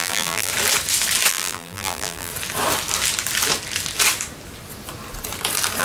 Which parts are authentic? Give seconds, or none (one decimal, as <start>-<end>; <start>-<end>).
0.5-1.3; 2.3-5.8